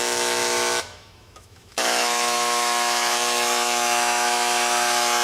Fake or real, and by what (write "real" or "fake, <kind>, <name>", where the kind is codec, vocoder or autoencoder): fake, autoencoder, DAC-VAE